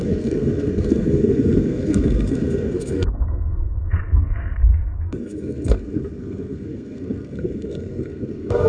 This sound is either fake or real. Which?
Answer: fake